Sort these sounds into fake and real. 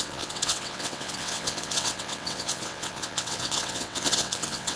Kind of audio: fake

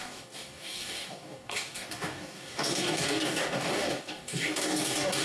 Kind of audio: fake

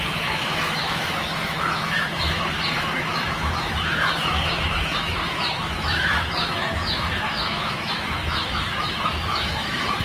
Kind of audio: fake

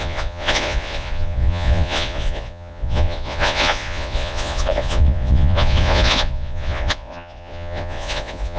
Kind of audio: fake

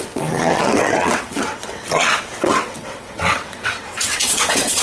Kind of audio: fake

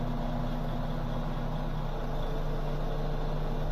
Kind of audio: real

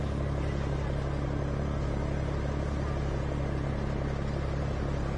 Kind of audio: real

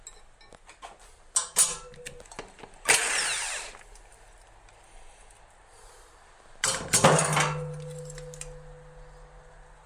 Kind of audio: real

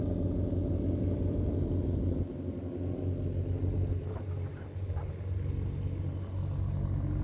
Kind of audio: real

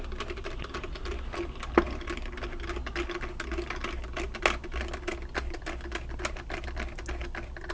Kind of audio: real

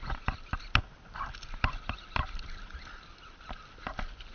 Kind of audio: real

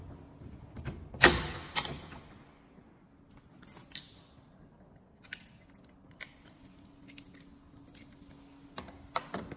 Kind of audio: real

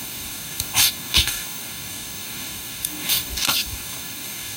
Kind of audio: fake